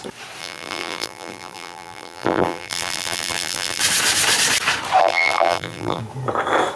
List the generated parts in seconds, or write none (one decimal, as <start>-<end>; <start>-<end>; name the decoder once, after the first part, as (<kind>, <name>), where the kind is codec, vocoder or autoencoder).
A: 0.4-3.8 (vocoder, BigVGAN v2); 5.0-6.0